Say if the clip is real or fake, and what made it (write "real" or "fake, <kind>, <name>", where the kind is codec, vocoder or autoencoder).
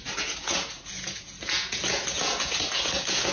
fake, vocoder, Vocos